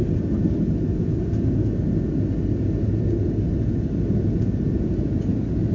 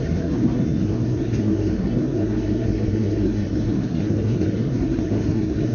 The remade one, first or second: second